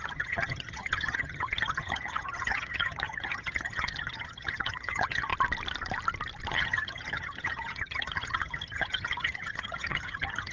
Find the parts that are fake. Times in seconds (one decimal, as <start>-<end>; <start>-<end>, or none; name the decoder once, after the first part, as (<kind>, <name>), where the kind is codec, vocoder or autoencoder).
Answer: 0.0-5.3 (vocoder, HiFi-GAN); 6.5-10.5